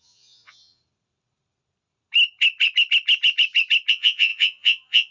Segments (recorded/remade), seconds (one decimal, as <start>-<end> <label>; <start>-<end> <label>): 0.0-0.8 remade; 0.8-3.9 recorded; 3.9-5.1 remade